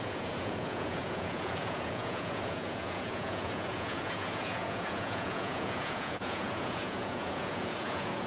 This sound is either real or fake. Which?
fake